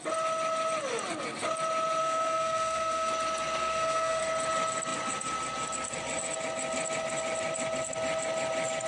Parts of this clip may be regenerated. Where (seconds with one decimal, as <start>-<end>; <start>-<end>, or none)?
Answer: 2.0-3.1; 3.6-4.2